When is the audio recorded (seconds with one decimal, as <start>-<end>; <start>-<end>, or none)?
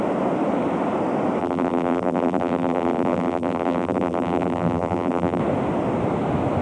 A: 0.0-1.4; 5.4-6.6